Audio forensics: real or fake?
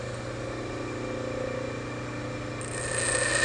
real